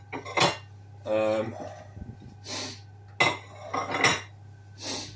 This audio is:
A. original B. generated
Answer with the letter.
A